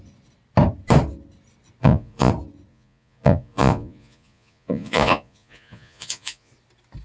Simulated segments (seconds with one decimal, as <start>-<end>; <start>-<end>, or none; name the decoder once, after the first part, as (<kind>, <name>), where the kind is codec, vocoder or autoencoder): 1.8-2.3 (vocoder, Vocos); 2.7-6.5